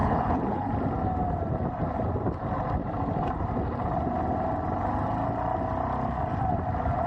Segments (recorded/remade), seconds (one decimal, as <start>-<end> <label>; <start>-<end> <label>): 0.0-0.7 remade; 0.7-7.1 recorded